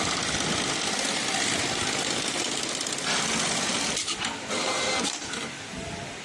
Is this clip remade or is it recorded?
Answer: recorded